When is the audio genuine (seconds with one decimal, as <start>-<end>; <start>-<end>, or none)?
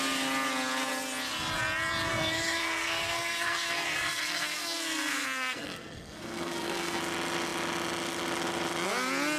0.0-2.1; 7.0-9.4